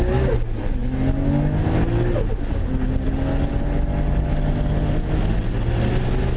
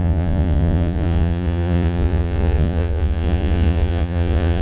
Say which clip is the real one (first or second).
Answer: first